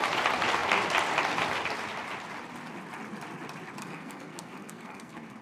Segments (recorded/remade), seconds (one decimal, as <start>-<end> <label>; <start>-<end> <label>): 0.0-3.8 recorded; 3.8-5.4 remade